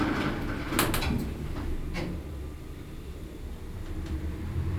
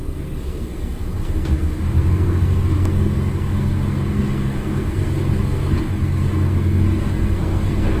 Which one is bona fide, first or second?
first